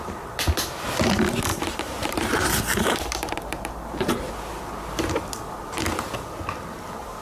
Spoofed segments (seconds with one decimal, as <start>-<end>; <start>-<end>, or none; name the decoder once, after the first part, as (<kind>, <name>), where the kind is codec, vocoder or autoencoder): 1.5-4.3 (vocoder, BigVGAN v2)